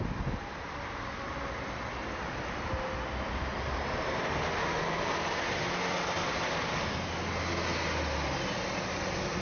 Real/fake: real